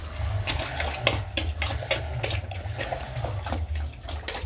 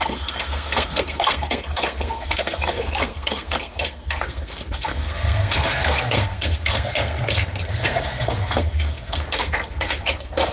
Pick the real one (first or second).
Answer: first